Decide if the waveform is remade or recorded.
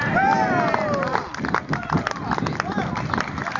recorded